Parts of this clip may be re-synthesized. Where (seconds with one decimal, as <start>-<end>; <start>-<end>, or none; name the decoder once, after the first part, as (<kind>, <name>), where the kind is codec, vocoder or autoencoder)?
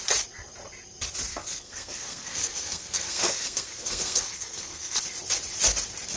1.3-5.0 (codec, SNAC)